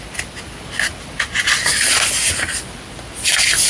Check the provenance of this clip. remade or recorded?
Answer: recorded